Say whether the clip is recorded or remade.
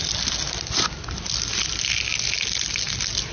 recorded